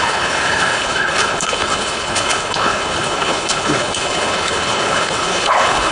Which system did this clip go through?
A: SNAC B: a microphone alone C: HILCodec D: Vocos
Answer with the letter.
C